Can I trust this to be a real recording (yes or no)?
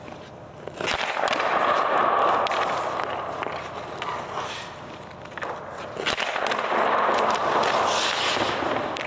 yes